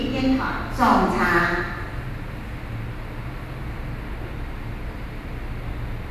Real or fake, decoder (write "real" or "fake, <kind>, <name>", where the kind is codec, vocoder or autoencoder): real